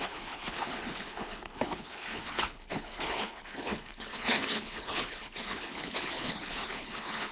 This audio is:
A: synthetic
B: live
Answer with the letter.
A